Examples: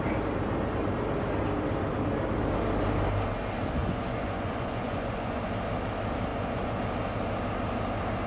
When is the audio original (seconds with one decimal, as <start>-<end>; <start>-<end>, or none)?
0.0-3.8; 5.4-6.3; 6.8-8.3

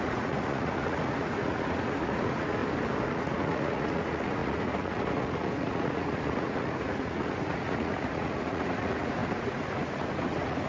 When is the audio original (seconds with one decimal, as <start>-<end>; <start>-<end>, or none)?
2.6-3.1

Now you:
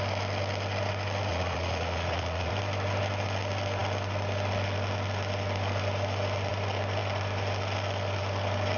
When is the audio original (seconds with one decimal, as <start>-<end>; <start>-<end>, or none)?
0.0-1.3; 2.5-8.8

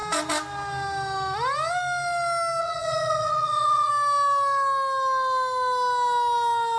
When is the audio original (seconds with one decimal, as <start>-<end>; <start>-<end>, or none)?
0.0-2.6; 3.9-6.8

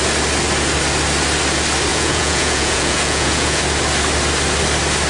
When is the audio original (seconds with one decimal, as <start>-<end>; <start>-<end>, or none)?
0.0-1.9; 3.6-5.1